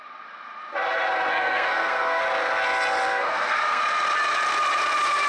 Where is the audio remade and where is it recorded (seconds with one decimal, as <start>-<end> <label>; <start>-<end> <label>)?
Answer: 0.0-1.3 recorded; 1.3-2.2 remade; 2.2-3.1 recorded; 3.1-3.8 remade; 3.8-5.3 recorded